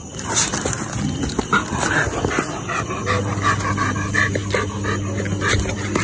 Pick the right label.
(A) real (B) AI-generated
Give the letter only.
A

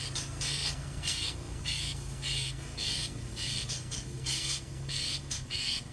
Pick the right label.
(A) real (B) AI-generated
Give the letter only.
B